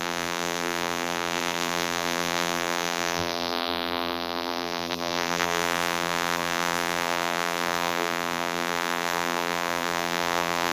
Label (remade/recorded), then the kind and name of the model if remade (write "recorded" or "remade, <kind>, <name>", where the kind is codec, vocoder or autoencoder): remade, vocoder, BigVGAN v2